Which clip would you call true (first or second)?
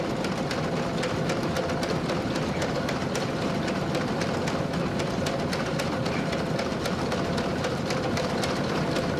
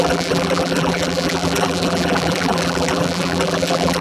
first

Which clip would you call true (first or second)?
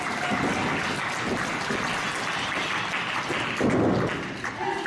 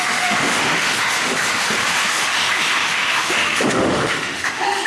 first